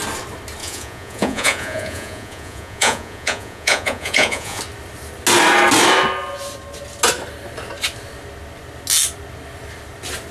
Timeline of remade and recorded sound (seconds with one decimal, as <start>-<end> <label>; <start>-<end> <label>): 0.0-0.6 recorded; 0.6-4.6 remade; 4.6-10.3 recorded